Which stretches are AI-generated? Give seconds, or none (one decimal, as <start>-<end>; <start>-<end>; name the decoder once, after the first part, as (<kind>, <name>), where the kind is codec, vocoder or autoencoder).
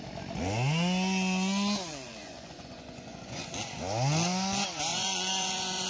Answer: 1.9-3.5 (vocoder, Vocos); 4.9-5.9